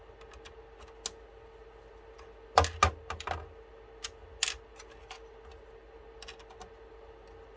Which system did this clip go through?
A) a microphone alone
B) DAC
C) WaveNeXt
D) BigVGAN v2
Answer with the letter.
A